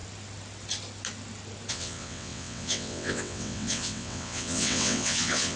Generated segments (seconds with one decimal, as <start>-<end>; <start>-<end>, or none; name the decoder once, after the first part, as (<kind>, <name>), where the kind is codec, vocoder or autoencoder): 1.7-5.6 (vocoder, WaveNeXt)